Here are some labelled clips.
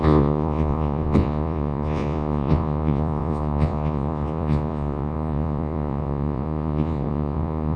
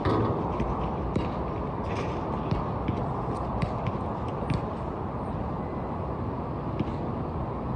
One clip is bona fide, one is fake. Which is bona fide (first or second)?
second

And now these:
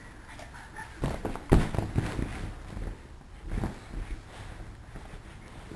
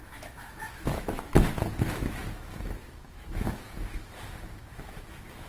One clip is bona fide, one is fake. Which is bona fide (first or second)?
first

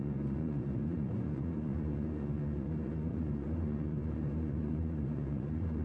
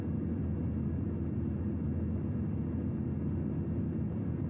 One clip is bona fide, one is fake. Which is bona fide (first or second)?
second